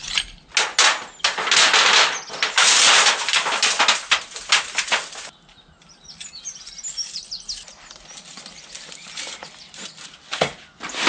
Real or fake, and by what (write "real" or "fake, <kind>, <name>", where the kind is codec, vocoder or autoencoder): real